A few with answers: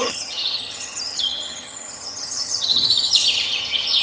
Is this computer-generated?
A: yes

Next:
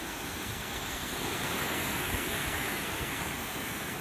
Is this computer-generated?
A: yes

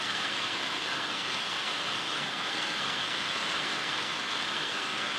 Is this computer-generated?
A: yes